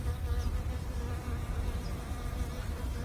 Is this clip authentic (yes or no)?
no